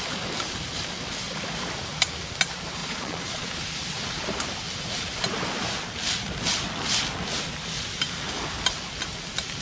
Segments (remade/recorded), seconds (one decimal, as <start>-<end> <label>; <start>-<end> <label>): 0.0-2.8 recorded; 2.8-3.5 remade; 3.5-9.6 recorded